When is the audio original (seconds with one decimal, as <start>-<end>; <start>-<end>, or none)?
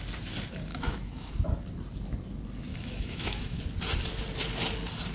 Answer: 0.0-0.7; 1.3-2.7; 3.6-5.1